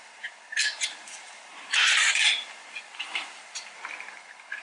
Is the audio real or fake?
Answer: real